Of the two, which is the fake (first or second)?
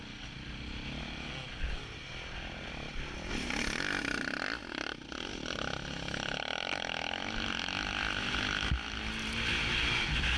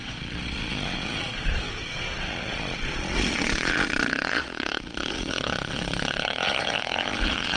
second